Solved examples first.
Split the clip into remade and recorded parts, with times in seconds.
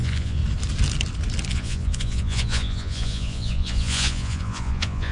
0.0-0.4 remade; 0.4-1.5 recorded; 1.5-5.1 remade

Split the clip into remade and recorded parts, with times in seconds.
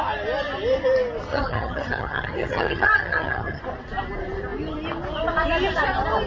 0.0-1.3 recorded; 1.3-3.6 remade; 3.6-6.3 recorded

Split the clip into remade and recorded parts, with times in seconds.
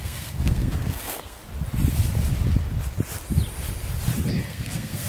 0.0-1.4 remade; 1.4-4.5 recorded; 4.5-5.1 remade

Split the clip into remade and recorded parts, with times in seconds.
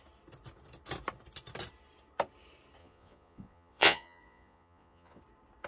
0.0-2.8 recorded; 2.8-5.2 remade; 5.2-5.7 recorded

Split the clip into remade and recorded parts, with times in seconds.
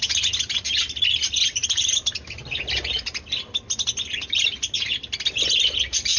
0.0-6.2 recorded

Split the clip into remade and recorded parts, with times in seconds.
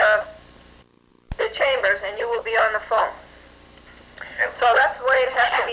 0.0-5.7 recorded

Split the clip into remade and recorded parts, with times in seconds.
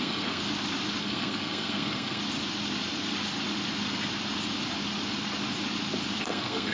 0.0-0.4 remade; 0.4-1.0 recorded; 1.0-2.2 remade; 2.2-6.2 recorded; 6.2-6.7 remade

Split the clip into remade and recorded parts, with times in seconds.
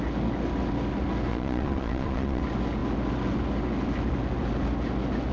0.0-1.3 recorded; 1.3-2.4 remade; 2.4-5.3 recorded